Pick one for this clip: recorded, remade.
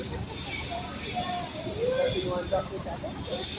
recorded